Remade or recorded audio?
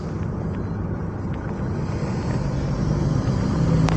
recorded